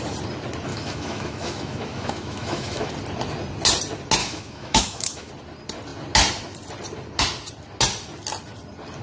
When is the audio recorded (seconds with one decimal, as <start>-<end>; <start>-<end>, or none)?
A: 0.0-0.7; 2.9-4.2; 5.3-9.0